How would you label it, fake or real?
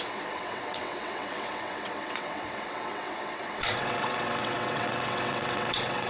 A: fake